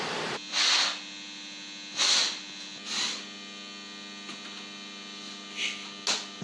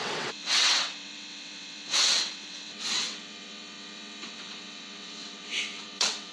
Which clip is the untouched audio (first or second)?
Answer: first